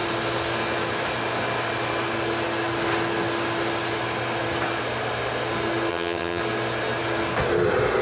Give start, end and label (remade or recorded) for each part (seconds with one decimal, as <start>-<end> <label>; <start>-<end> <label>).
0.0-5.9 recorded; 5.9-6.4 remade; 6.4-8.0 recorded